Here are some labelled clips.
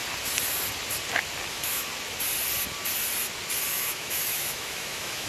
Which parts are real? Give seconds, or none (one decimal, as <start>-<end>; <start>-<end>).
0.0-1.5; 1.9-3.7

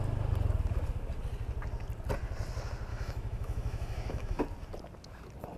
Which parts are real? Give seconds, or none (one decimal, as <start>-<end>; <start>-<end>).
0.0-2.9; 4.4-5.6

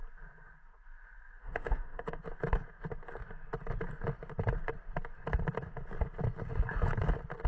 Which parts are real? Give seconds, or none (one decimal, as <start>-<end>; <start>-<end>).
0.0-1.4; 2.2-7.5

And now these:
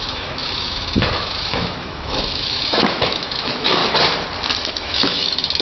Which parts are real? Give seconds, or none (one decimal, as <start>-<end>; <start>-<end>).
3.8-4.7

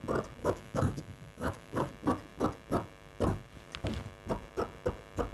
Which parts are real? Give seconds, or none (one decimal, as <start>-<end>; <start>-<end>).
0.0-0.4; 1.9-5.3

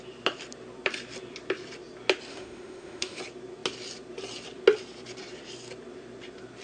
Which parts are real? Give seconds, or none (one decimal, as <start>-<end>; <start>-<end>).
0.0-2.3; 3.2-6.6